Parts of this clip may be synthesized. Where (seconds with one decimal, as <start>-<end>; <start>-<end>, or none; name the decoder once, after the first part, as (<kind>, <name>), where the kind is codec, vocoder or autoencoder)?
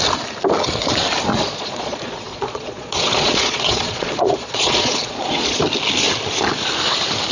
1.3-5.6 (vocoder, Vocos)